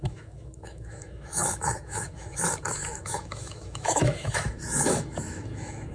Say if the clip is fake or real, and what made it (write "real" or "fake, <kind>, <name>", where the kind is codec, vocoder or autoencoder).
fake, autoencoder, DAC-VAE